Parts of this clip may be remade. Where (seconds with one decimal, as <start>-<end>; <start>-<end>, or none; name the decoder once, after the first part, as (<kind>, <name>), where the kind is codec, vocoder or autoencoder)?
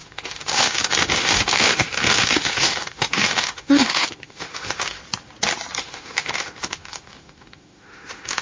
0.0-5.0 (autoencoder, DAC-VAE); 5.8-8.4